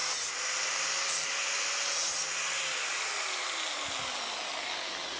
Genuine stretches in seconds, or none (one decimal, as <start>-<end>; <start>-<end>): 0.0-5.2